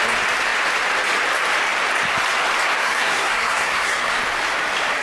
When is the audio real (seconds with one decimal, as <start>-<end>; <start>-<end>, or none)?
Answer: 0.0-2.8; 4.2-5.0